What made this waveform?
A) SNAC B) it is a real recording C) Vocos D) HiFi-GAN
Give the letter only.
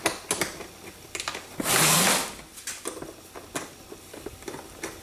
B